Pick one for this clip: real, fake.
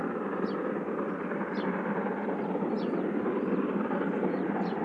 real